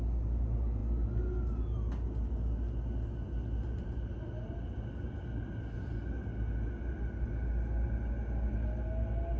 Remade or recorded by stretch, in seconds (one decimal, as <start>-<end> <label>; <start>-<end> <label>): 0.0-9.4 recorded